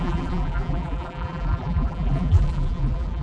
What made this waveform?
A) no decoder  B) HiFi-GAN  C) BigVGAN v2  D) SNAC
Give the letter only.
C